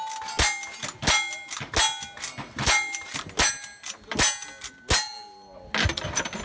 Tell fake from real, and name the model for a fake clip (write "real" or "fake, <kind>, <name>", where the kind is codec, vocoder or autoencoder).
real